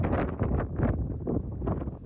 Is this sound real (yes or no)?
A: yes